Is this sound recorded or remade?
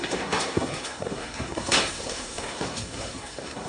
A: remade